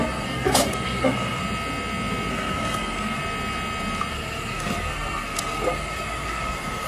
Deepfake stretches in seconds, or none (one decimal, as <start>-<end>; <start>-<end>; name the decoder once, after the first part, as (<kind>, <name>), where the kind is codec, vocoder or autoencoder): 0.0-1.4 (codec, SNAC); 2.3-3.2; 4.1-6.9